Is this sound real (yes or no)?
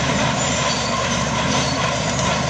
no